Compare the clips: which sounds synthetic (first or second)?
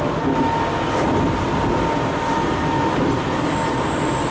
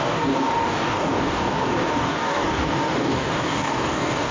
second